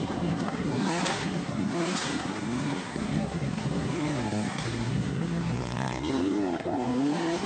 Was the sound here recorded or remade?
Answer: remade